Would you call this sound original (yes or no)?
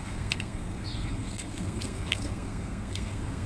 no